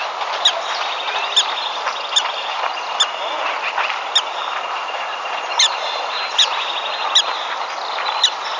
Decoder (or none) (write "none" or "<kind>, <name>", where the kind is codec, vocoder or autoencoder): none